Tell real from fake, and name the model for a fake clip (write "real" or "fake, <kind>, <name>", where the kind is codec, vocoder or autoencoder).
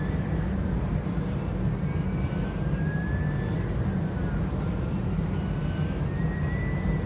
real